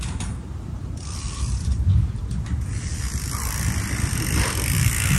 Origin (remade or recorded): recorded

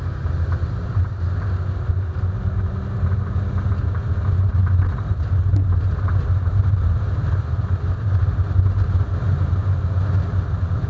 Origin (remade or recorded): recorded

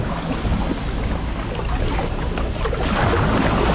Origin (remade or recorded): recorded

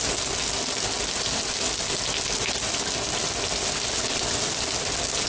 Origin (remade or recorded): recorded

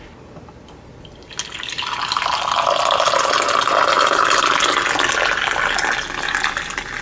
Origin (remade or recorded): recorded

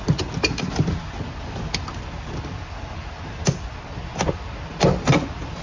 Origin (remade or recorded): recorded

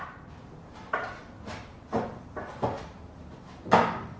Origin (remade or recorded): recorded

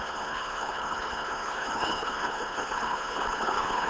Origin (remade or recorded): remade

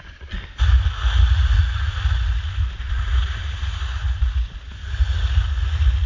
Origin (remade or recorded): recorded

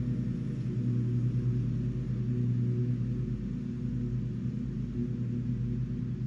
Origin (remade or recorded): recorded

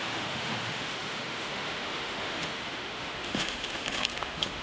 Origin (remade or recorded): remade